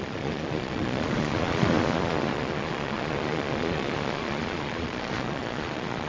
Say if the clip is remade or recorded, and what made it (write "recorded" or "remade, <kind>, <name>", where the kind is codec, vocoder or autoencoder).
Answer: remade, vocoder, Vocos